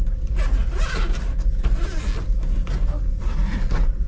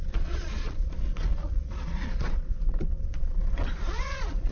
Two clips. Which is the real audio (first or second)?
first